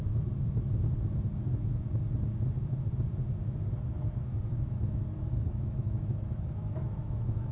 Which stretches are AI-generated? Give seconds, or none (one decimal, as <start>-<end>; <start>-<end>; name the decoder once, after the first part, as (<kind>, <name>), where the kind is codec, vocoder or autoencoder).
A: 4.5-7.5 (autoencoder, DAC-VAE)